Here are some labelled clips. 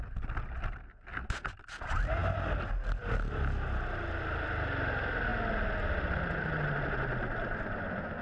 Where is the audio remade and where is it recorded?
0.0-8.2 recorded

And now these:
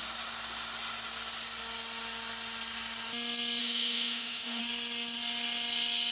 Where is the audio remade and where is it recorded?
0.0-3.6 recorded; 3.6-4.6 remade; 4.6-6.1 recorded

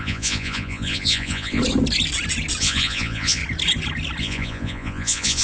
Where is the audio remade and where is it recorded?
0.0-1.6 remade; 1.6-2.6 recorded; 2.6-3.4 remade; 3.4-4.2 recorded; 4.2-5.4 remade

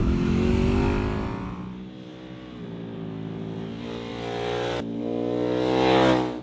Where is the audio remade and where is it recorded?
0.0-0.5 remade; 0.5-6.4 recorded

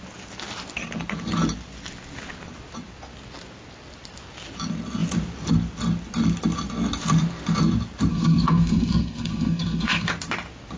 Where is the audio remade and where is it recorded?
0.0-8.1 recorded; 8.1-10.1 remade; 10.1-10.8 recorded